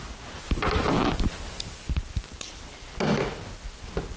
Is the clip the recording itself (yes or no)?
yes